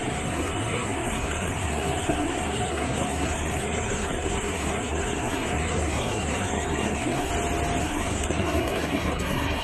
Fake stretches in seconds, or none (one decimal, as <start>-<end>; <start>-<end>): 0.0-7.3; 7.8-9.6